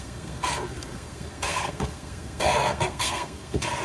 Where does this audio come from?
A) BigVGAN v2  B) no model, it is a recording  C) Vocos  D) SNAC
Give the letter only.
D